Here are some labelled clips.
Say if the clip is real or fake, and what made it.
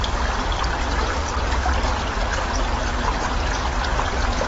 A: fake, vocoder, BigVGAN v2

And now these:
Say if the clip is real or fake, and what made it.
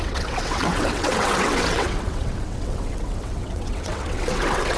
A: fake, vocoder, WaveNeXt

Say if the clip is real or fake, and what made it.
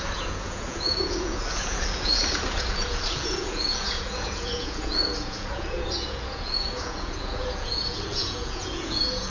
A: fake, vocoder, Vocos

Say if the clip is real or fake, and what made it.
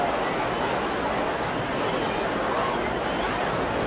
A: real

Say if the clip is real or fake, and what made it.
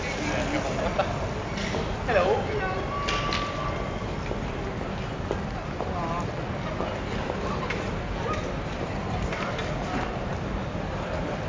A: real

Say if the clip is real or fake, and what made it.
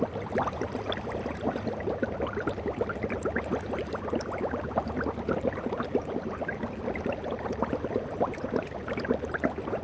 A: real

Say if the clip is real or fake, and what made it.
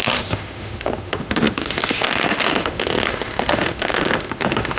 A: fake, autoencoder, DAC-VAE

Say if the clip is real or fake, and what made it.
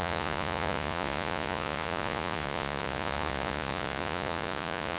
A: fake, vocoder, Vocos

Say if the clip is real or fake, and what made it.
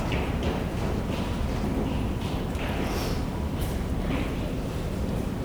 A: real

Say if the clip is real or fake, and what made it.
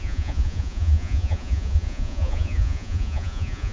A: fake, vocoder, Vocos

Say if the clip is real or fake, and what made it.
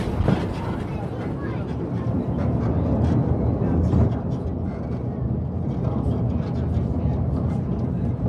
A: real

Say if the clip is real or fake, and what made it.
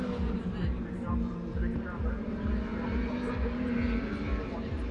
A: fake, vocoder, BigVGAN v2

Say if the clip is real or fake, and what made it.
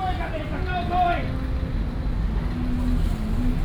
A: real